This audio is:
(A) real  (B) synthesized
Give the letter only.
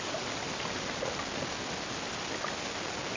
A